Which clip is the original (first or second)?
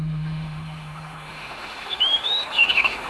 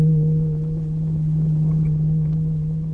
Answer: second